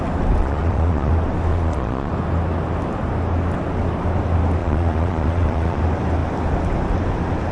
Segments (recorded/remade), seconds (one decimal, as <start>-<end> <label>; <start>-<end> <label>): 0.0-0.4 recorded; 0.4-1.1 remade; 1.1-1.5 recorded; 1.5-2.1 remade; 2.1-4.6 recorded; 4.6-5.8 remade; 5.8-7.5 recorded